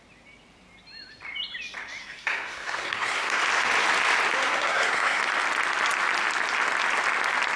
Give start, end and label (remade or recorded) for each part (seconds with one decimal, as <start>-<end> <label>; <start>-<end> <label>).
0.0-2.0 recorded; 2.0-3.4 remade; 3.4-4.4 recorded; 4.4-5.2 remade; 5.2-7.6 recorded